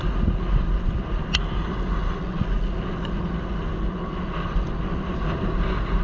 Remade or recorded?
recorded